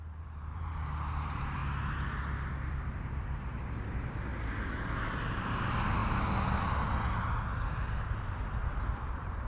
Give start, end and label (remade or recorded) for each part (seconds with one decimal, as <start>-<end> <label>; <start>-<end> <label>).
0.0-1.6 remade; 1.6-2.5 recorded; 2.5-4.3 remade; 4.3-5.2 recorded; 5.2-6.0 remade; 6.0-8.6 recorded; 8.6-9.5 remade